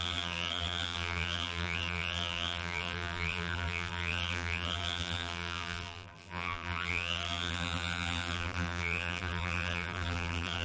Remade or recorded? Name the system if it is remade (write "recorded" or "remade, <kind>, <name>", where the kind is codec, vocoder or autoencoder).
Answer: remade, vocoder, BigVGAN v2